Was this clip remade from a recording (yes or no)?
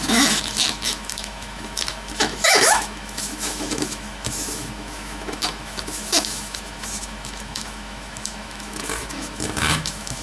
yes